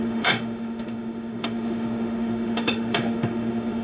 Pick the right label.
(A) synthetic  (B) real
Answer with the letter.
A